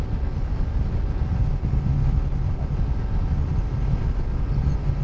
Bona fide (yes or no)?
yes